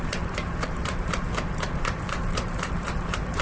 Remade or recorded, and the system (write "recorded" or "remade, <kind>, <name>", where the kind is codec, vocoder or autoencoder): remade, vocoder, BigVGAN v2